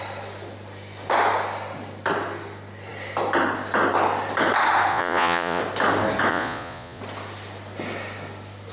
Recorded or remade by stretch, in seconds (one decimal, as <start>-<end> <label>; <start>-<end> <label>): 0.0-4.9 recorded; 4.9-5.6 remade; 5.6-6.3 recorded; 6.3-7.0 remade; 7.0-8.7 recorded